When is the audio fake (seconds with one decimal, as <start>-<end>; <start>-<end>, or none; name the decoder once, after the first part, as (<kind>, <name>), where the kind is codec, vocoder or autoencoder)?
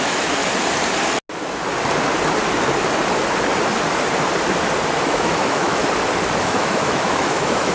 0.0-0.4 (autoencoder, DAC-VAE); 5.0-5.8; 6.4-7.7